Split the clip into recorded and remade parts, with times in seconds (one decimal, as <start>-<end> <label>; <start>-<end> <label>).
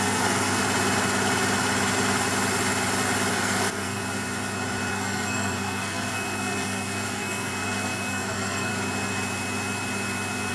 0.0-0.6 remade; 0.6-3.3 recorded; 3.3-4.0 remade; 4.0-4.9 recorded; 4.9-8.7 remade; 8.7-10.5 recorded